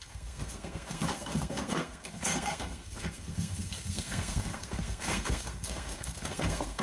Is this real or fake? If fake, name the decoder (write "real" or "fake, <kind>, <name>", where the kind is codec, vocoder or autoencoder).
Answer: fake, codec, SNAC